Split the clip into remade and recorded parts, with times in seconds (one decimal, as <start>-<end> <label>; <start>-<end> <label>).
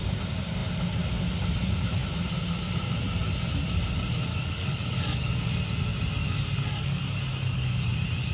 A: 0.0-4.3 recorded; 4.3-5.6 remade; 5.6-6.2 recorded; 6.2-7.9 remade; 7.9-8.3 recorded